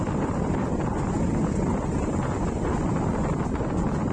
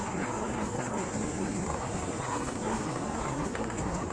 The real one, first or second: first